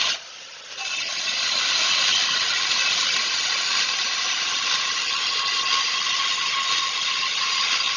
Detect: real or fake real